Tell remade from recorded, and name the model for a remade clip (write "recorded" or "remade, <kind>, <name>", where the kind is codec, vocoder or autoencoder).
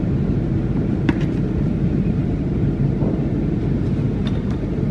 remade, vocoder, BigVGAN v2